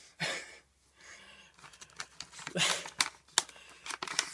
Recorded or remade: recorded